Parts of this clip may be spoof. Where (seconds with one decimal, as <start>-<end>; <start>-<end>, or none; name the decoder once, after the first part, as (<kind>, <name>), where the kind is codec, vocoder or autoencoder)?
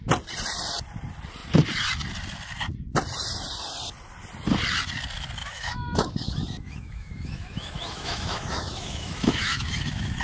5.4-10.2 (autoencoder, DAC-VAE)